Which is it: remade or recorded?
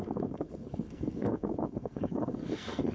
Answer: remade